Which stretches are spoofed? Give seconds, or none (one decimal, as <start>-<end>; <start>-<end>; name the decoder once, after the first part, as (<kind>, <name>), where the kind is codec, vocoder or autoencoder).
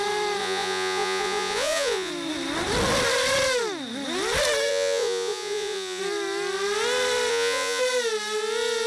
0.4-2.1 (vocoder, Vocos); 4.7-6.0; 7.3-7.8